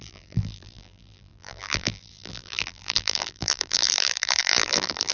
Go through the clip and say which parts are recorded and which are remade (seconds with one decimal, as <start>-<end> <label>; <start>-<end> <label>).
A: 0.0-5.1 remade